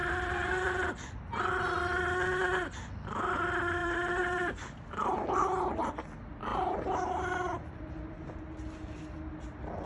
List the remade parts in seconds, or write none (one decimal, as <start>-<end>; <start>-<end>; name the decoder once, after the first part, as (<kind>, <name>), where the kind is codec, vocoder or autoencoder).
0.0-0.9 (vocoder, BigVGAN v2); 3.8-5.1; 6.5-7.9